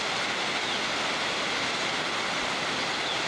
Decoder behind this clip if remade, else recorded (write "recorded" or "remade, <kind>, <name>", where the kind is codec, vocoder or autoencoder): recorded